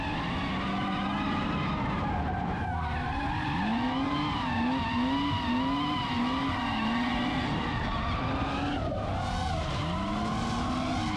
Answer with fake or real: real